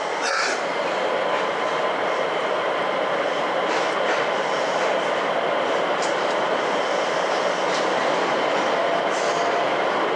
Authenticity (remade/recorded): recorded